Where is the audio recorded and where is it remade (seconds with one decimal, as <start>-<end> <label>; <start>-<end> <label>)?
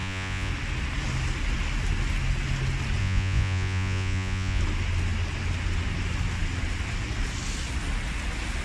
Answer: 0.0-0.5 remade; 0.5-3.0 recorded; 3.0-4.6 remade; 4.6-8.6 recorded